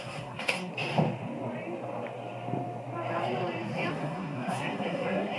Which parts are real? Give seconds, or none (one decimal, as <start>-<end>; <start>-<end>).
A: 0.7-3.9